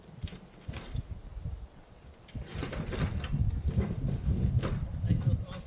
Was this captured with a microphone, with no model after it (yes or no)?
yes